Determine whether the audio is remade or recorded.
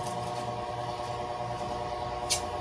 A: recorded